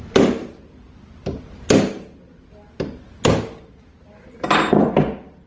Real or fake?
real